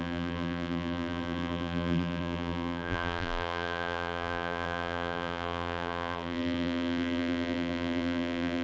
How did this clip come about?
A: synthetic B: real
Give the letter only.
A